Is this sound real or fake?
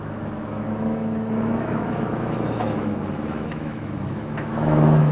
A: fake